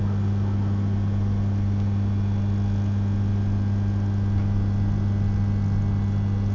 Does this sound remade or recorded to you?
recorded